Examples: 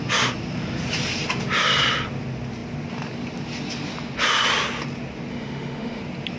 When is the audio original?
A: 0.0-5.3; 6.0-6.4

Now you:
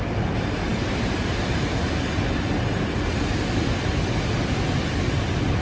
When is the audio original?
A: 0.0-5.6

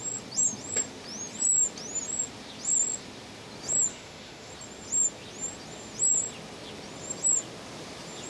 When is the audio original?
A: 0.0-3.9; 4.5-8.3